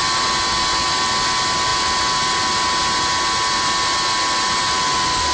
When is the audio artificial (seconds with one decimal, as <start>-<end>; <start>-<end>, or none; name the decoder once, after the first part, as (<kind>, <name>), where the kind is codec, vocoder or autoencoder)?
none